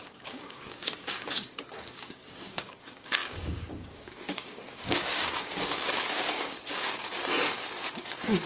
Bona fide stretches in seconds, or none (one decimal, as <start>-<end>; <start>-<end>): 7.2-7.9